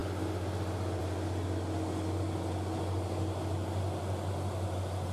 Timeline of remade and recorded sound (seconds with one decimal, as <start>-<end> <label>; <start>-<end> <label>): 0.0-5.1 recorded